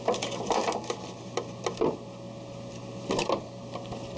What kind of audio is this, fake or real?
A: real